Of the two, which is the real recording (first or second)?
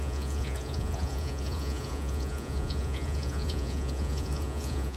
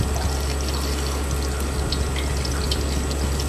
second